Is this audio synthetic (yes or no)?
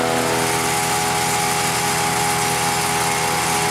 no